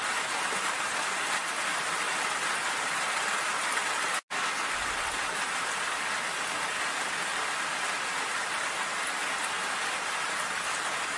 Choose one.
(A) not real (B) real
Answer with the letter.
B